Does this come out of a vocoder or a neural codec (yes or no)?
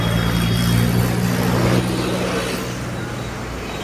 no